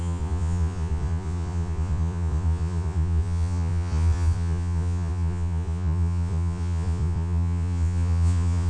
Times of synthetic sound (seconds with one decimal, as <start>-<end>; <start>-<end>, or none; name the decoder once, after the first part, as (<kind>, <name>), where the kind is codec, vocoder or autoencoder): 0.0-8.7 (vocoder, Vocos)